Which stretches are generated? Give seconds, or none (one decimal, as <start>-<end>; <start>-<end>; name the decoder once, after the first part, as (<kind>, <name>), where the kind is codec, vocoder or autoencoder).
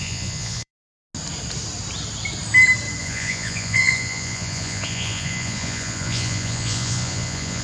0.0-0.7 (vocoder, Vocos); 3.0-7.6